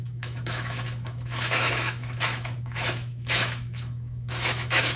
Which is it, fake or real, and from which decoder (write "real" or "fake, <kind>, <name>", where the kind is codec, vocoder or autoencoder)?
fake, autoencoder, DAC-VAE